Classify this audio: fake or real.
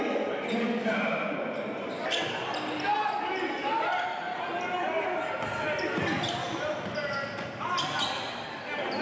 real